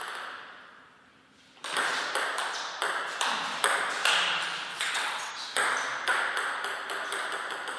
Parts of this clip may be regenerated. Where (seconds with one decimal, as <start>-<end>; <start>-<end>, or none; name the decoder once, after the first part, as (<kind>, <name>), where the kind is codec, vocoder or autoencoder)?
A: 4.7-5.3 (vocoder, WaveNeXt)